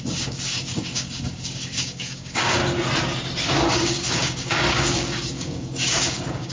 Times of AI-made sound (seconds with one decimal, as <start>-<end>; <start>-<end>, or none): 0.0-2.6; 3.7-6.5

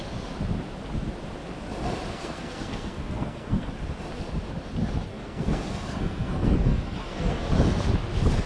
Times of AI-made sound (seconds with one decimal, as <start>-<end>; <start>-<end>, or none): 2.1-3.7; 5.1-7.5

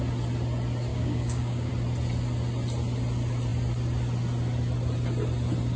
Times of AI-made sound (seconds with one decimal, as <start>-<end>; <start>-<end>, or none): 0.9-1.7

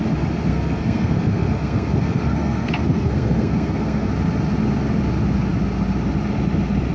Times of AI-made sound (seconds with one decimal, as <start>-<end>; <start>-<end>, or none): 0.5-4.1

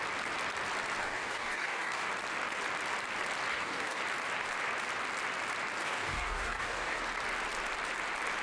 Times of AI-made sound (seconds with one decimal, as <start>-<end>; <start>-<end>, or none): 1.0-2.1; 3.5-4.0; 5.8-7.0

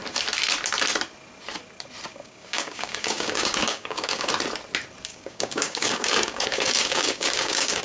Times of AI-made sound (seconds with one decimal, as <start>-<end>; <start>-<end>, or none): 2.1-4.3; 5.1-7.8